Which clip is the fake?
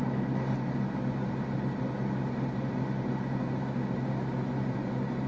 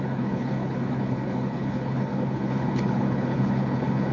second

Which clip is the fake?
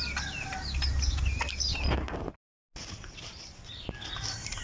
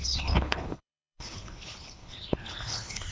second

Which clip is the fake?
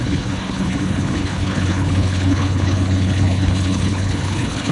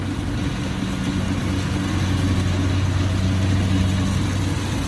first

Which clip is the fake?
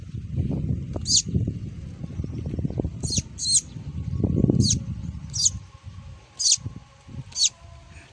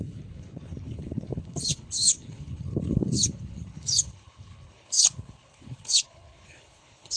second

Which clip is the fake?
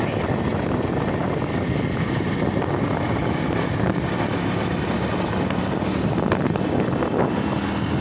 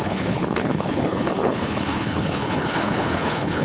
second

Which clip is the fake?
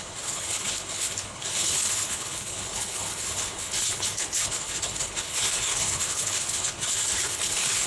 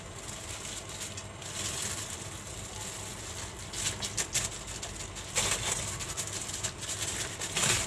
first